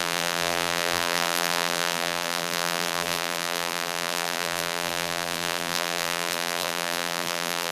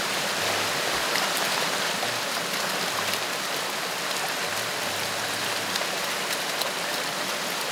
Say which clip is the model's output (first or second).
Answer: first